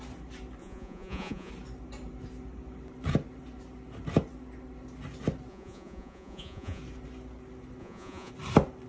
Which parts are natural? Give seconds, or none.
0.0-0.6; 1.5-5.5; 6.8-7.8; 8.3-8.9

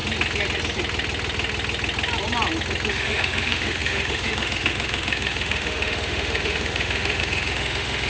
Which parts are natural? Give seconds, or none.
0.0-2.9

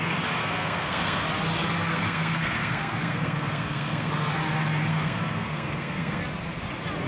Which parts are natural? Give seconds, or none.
0.0-0.4; 1.2-1.9; 4.1-4.9; 6.2-7.1

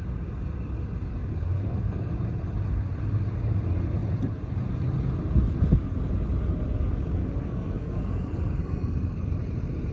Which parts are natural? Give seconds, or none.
0.0-1.3; 2.1-7.2; 9.3-9.9

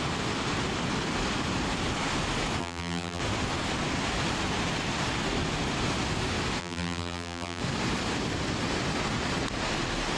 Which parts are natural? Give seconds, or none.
0.0-2.6; 3.2-6.6; 7.6-10.2